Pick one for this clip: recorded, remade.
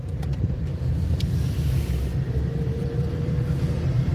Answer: remade